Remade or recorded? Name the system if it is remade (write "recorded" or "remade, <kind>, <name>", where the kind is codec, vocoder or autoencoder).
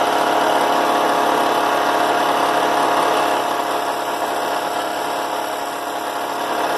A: recorded